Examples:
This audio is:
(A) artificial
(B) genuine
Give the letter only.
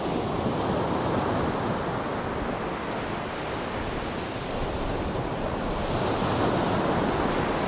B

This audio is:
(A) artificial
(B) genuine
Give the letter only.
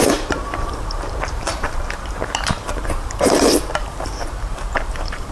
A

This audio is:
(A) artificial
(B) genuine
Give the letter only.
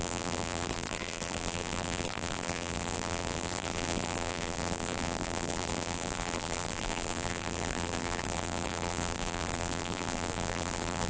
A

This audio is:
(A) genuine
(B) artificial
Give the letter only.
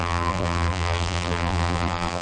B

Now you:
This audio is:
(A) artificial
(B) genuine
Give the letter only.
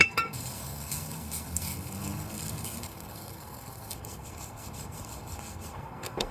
A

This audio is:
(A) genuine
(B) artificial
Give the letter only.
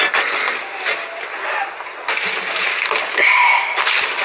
A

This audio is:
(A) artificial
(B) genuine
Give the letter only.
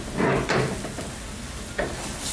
B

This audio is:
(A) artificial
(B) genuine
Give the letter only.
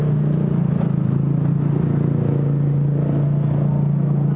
B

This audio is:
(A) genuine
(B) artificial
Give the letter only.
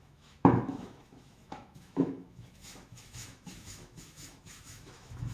B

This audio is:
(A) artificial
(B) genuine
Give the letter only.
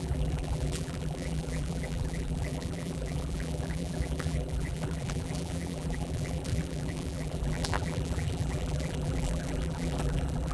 A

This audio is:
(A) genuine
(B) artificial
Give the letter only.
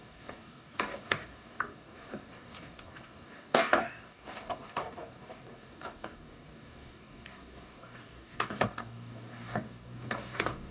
B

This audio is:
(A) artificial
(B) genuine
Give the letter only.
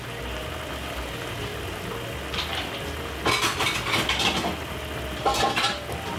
B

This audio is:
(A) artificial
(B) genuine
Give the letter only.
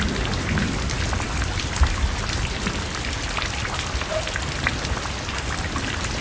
B